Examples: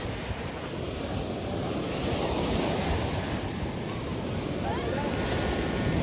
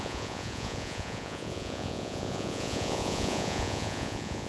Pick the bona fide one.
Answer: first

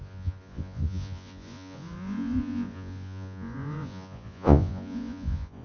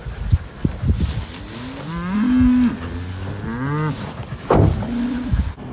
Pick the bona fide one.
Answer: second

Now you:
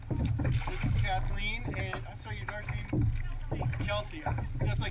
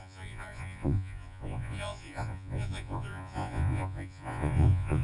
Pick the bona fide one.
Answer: first